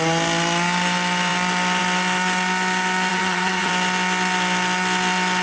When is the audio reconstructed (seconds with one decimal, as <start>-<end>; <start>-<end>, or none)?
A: 3.1-3.7